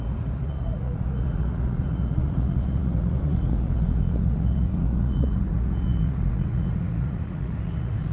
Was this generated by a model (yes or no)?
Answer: yes